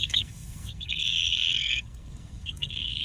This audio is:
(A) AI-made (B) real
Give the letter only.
A